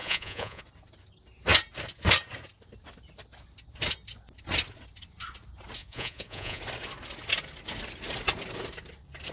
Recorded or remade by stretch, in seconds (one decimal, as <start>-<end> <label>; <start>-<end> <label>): 0.0-0.6 remade; 0.6-5.8 recorded; 5.8-6.6 remade; 6.6-9.3 recorded